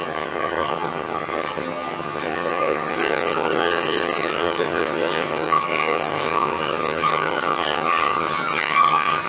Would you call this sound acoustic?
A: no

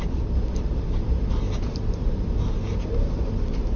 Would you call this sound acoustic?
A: yes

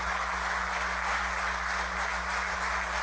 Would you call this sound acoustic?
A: yes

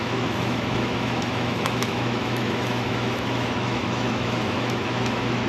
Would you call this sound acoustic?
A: no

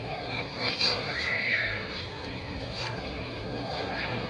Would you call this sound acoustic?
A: no